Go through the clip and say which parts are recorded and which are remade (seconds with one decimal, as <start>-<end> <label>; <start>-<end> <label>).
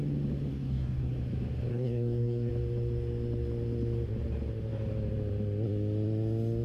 0.0-0.5 recorded; 0.5-1.1 remade; 1.1-1.7 recorded; 1.7-2.5 remade; 2.5-6.6 recorded